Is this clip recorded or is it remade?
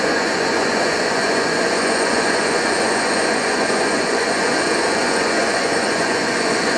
remade